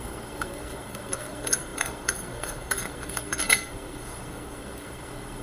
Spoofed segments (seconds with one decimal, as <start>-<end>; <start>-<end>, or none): 0.0-5.4